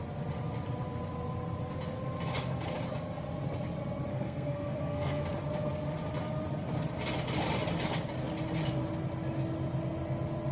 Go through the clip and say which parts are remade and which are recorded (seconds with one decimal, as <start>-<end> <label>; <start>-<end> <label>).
0.0-4.1 recorded; 4.1-5.2 remade; 5.2-10.5 recorded